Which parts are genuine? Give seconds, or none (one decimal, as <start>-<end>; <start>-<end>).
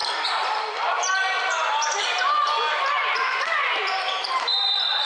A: 0.0-5.0